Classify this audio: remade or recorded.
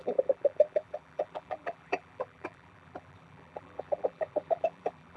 remade